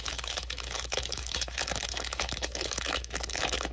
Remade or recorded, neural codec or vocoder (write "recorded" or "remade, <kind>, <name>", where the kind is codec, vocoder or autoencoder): remade, autoencoder, DAC-VAE